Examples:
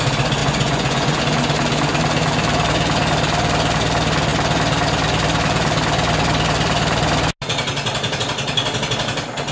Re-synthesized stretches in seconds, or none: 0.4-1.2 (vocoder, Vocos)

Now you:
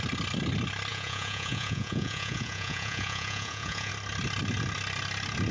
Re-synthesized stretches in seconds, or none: 0.9-3.9 (vocoder, Vocos)

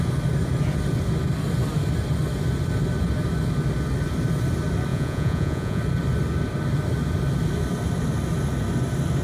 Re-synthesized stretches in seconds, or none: 4.9-5.8 (vocoder, Vocos)

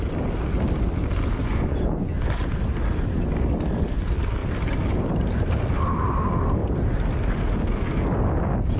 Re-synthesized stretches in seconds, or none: 1.4-2.4 (vocoder, Vocos)

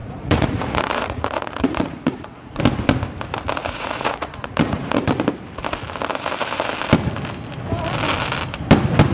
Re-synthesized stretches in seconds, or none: 0.0-2.6 (vocoder, Vocos); 3.6-5.1